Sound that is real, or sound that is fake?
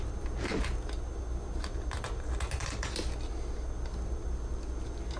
real